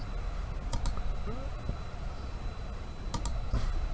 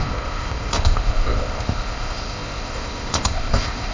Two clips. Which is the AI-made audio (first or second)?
second